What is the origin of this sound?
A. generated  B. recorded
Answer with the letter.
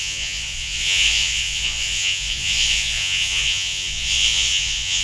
A